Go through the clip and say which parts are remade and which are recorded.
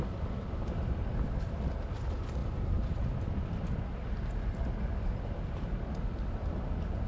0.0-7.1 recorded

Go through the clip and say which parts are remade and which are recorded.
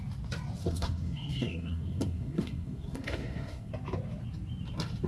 0.0-0.6 recorded; 0.6-3.7 remade; 3.7-5.1 recorded